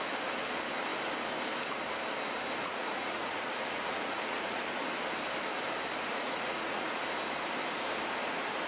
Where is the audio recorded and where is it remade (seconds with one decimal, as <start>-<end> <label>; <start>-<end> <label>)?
0.0-2.6 recorded; 2.6-4.6 remade; 4.6-6.1 recorded; 6.1-7.0 remade; 7.0-8.7 recorded